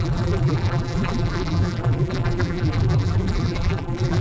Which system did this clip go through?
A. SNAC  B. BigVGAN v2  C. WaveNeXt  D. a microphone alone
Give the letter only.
B